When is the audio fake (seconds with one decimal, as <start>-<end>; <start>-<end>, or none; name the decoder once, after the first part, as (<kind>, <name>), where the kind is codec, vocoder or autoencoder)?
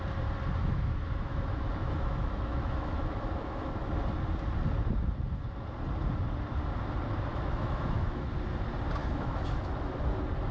0.6-3.9 (autoencoder, DAC-VAE); 7.3-8.3; 9.0-9.9